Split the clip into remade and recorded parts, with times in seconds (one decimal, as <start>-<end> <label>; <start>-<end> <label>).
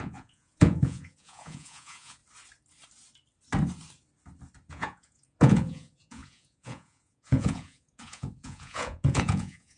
0.0-2.2 remade; 2.2-4.7 recorded; 4.7-9.8 remade